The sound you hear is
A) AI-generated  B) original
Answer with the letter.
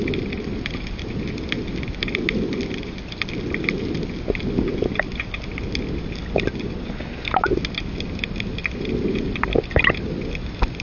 B